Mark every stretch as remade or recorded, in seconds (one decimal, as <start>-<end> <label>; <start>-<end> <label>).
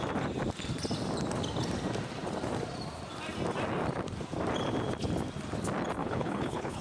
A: 0.0-6.0 recorded; 6.0-6.8 remade